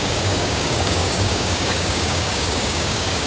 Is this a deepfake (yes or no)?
yes